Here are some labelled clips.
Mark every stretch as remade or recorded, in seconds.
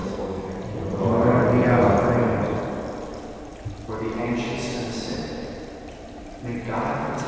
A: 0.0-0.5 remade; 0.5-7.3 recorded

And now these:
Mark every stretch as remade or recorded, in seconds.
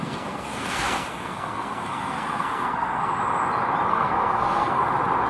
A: 0.0-3.2 remade; 3.2-3.9 recorded; 3.9-4.8 remade; 4.8-5.3 recorded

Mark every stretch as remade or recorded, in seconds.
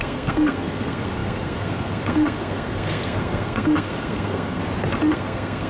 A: 0.0-4.6 remade; 4.6-5.1 recorded; 5.1-5.7 remade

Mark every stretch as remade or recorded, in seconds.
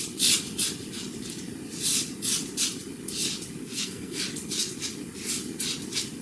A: 0.0-3.6 recorded; 3.6-4.2 remade; 4.2-6.2 recorded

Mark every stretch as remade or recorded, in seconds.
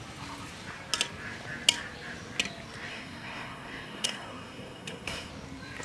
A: 0.0-2.9 recorded; 2.9-5.3 remade; 5.3-5.8 recorded